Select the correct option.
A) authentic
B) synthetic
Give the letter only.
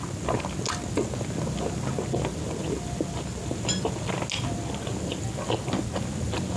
A